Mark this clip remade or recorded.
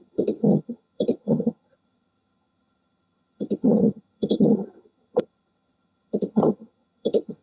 remade